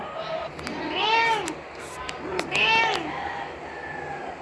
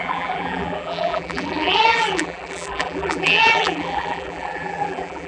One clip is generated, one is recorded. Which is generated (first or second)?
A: second